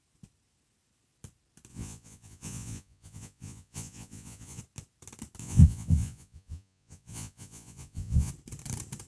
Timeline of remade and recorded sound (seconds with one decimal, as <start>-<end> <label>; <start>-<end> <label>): 0.0-1.7 recorded; 1.7-4.6 remade; 4.6-5.4 recorded; 5.4-8.3 remade; 8.3-9.1 recorded